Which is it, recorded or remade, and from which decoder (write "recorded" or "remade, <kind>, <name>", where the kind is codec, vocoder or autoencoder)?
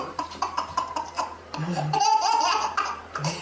remade, vocoder, BigVGAN v2